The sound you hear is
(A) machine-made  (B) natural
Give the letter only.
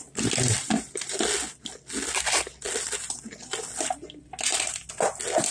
B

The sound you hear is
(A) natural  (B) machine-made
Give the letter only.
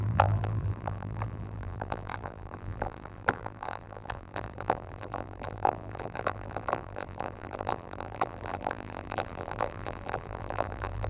B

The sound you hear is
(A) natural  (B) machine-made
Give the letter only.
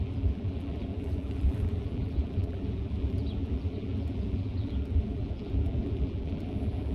B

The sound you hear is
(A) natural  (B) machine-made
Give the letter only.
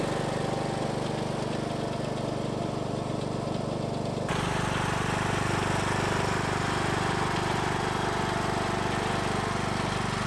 A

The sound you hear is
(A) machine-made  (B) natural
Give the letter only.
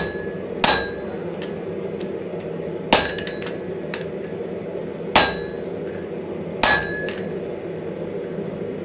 B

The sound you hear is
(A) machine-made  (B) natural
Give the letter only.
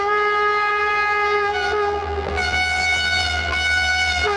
A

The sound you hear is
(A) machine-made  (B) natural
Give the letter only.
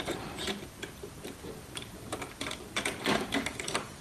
A